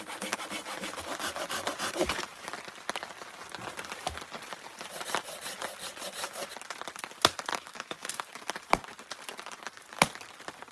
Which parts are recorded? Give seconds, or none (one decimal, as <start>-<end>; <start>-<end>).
0.0-7.5; 8.2-10.7